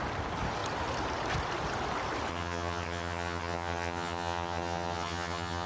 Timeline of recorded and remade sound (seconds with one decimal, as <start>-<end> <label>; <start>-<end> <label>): 0.0-2.3 recorded; 2.3-5.7 remade